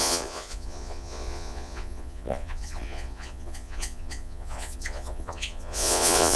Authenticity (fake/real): fake